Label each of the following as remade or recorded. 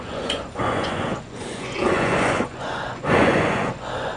remade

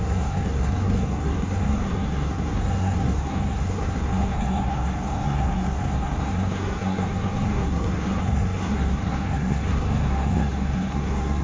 remade